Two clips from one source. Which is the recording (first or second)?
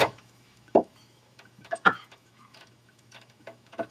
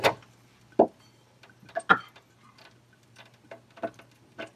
second